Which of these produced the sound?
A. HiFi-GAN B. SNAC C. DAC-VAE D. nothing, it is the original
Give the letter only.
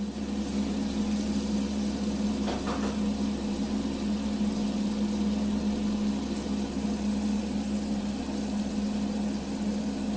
D